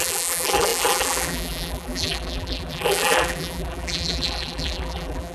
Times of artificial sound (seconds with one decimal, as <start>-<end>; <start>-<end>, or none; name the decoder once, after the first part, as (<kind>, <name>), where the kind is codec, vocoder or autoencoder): 0.0-5.3 (vocoder, BigVGAN v2)